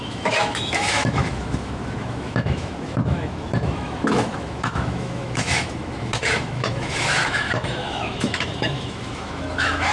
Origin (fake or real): fake